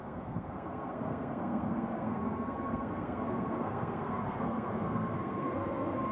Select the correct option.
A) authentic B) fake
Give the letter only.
B